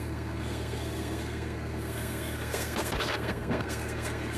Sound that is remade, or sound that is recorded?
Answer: remade